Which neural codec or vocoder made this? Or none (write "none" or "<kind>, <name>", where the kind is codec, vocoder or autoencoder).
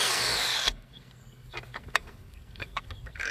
codec, SNAC